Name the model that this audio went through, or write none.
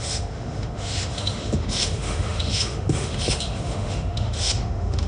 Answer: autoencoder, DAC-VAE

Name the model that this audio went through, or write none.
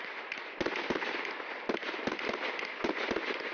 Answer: none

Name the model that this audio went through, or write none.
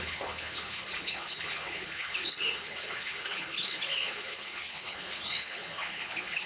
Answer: codec, HILCodec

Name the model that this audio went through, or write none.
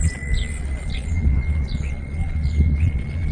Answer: vocoder, Vocos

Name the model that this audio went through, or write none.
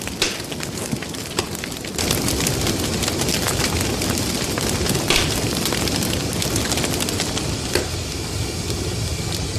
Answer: none